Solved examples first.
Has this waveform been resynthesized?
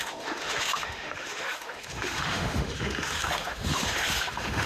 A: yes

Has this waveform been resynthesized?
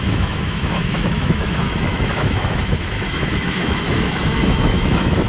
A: yes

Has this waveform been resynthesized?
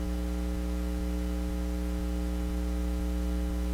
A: no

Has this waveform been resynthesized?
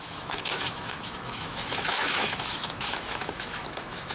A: yes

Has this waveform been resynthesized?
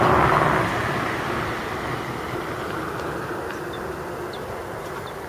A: no